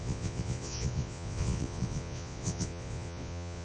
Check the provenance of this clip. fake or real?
fake